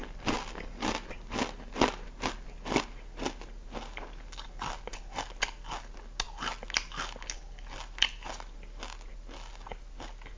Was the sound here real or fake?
real